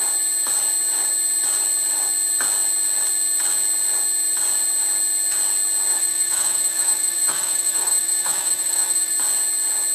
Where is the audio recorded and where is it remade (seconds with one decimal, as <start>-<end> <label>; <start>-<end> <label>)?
0.0-5.9 recorded; 5.9-9.1 remade; 9.1-9.9 recorded